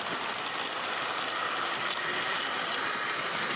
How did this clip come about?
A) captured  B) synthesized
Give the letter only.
A